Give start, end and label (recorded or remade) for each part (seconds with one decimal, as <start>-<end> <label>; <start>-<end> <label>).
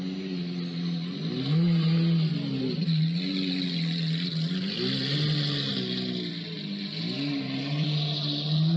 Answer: 0.0-8.8 recorded